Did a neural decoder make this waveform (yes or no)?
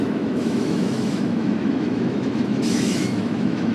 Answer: yes